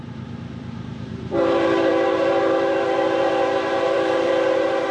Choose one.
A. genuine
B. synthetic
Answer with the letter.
B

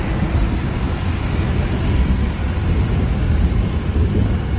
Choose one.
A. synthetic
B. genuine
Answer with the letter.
B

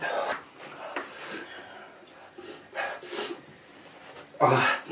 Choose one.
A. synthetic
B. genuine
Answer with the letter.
B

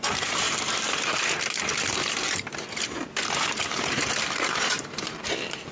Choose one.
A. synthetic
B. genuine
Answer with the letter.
A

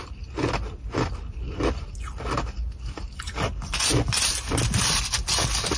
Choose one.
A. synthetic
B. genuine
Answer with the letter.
B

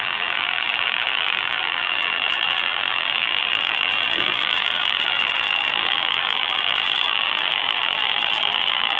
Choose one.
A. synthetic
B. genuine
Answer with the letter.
A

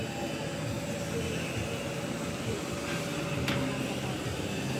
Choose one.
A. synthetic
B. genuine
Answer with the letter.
B